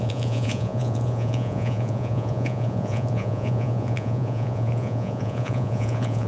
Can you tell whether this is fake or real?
fake